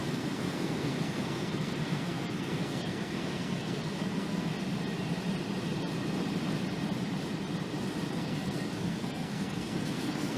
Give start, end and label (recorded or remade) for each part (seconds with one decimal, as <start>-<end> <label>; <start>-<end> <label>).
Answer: 0.0-4.5 remade; 4.5-8.1 recorded; 8.1-10.4 remade